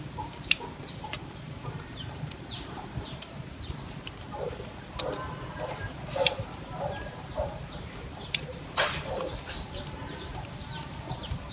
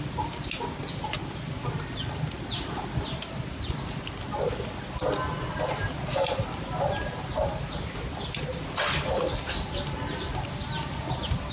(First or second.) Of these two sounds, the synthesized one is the first